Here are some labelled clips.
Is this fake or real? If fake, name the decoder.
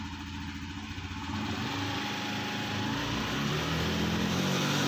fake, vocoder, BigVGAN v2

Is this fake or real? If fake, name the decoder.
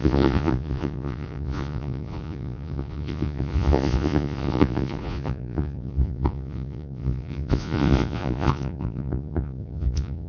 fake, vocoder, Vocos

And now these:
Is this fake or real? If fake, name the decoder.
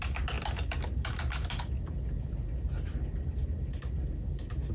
real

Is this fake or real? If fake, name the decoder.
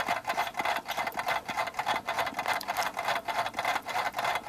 real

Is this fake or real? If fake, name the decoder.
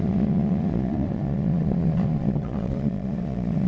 fake, vocoder, Vocos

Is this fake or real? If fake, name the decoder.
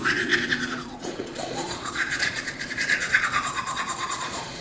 fake, vocoder, Vocos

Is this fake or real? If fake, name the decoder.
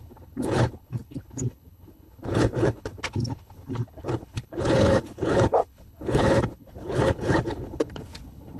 fake, codec, HILCodec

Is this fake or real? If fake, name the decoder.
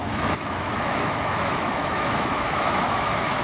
fake, autoencoder, DAC-VAE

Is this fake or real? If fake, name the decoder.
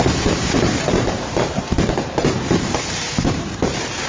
fake, vocoder, BigVGAN v2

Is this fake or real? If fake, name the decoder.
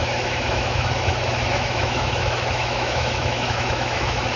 fake, autoencoder, DAC-VAE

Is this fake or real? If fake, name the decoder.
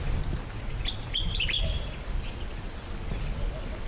real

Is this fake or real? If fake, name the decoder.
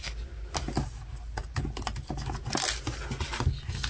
real